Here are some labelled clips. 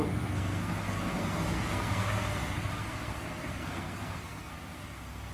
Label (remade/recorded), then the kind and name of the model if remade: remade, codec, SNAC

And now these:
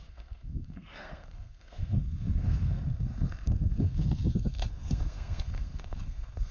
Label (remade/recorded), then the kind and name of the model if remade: remade, codec, SNAC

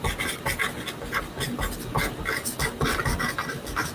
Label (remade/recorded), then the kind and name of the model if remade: recorded